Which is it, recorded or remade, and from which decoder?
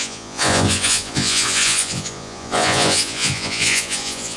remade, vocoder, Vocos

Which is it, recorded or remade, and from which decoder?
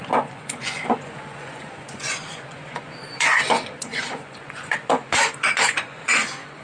remade, vocoder, Vocos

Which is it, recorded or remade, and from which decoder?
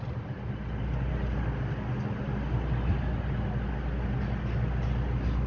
recorded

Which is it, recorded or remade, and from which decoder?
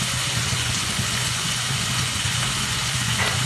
remade, vocoder, Vocos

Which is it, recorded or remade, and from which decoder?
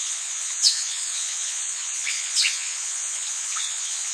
remade, vocoder, Vocos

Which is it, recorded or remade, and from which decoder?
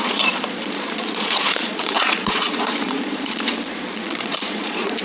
remade, vocoder, Vocos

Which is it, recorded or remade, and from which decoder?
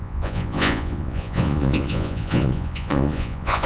remade, vocoder, Vocos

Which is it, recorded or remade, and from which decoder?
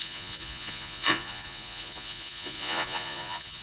remade, vocoder, Vocos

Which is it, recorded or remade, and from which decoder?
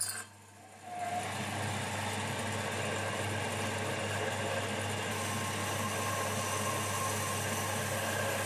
recorded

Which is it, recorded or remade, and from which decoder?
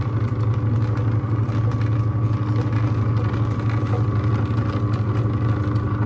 recorded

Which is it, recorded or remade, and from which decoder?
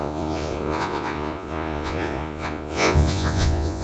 remade, vocoder, Vocos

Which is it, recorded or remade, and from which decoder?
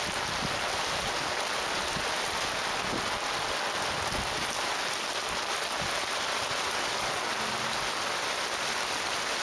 recorded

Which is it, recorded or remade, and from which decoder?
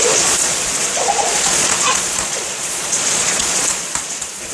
remade, vocoder, Vocos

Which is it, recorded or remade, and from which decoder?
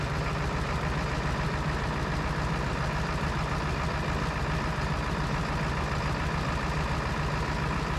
recorded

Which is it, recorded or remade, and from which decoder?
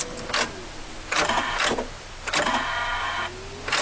recorded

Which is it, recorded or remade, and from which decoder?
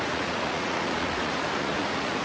remade, vocoder, Vocos